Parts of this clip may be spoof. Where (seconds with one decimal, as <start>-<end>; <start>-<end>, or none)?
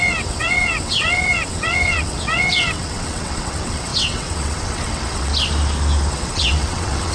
0.0-5.3; 6.1-7.1